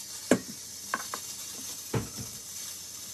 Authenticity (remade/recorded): recorded